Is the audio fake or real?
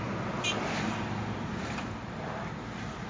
real